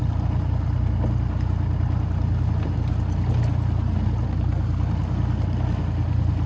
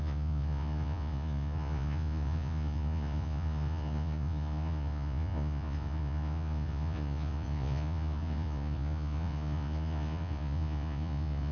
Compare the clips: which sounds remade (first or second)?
second